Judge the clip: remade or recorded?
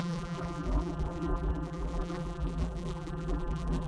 remade